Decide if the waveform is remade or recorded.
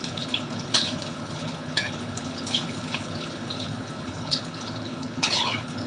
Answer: remade